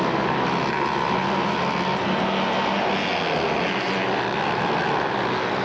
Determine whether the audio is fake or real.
real